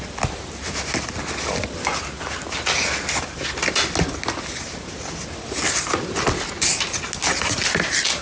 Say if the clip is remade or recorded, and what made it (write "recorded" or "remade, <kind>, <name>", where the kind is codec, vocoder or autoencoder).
recorded